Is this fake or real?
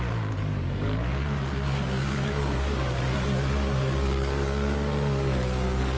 fake